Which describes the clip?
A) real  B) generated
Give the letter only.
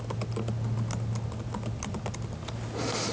A